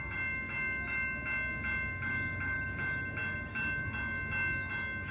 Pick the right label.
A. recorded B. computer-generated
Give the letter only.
A